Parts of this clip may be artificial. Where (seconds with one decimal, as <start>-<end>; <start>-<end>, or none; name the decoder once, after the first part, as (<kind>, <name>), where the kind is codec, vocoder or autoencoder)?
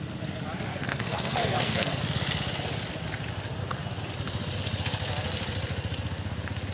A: 0.7-2.0 (codec, SNAC)